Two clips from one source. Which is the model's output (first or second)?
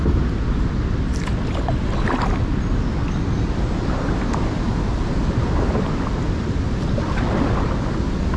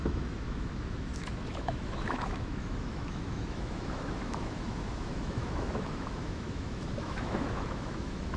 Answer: second